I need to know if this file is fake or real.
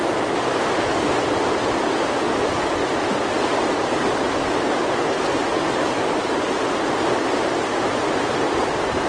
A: real